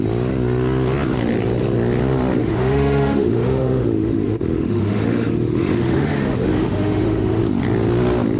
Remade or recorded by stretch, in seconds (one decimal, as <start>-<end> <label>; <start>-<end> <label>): 0.0-2.4 recorded; 2.4-7.4 remade; 7.4-8.4 recorded